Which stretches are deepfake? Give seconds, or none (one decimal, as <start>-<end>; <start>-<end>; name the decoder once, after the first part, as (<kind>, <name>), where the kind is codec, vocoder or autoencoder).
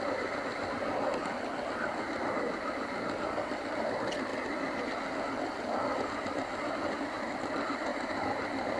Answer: 0.0-1.1 (vocoder, BigVGAN v2); 2.4-4.3; 6.9-7.9